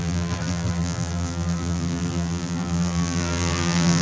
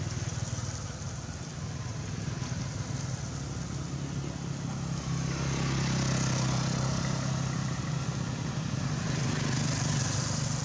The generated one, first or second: first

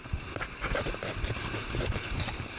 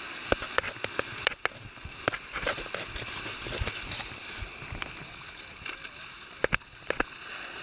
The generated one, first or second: first